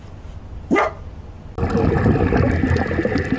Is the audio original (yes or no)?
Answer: yes